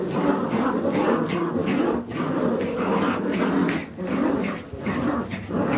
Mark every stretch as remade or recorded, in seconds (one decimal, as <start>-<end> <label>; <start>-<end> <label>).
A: 0.0-5.8 recorded